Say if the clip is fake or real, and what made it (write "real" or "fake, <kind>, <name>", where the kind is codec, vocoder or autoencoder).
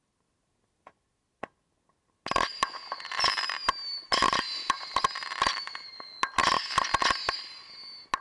real